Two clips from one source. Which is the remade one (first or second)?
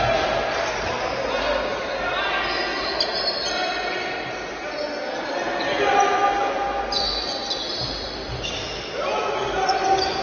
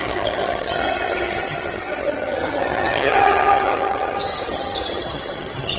second